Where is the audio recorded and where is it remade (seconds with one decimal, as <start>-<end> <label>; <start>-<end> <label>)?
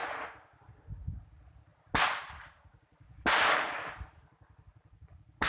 0.0-5.5 recorded